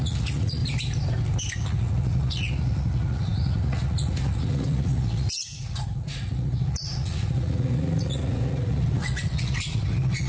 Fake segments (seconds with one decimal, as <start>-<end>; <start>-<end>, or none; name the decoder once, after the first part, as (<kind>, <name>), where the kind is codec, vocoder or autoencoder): 0.0-0.6 (vocoder, Vocos); 1.5-10.3